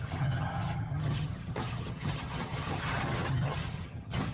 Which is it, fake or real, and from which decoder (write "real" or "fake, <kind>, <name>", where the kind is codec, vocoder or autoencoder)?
fake, vocoder, HiFi-GAN